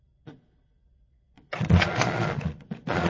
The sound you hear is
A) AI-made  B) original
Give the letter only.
A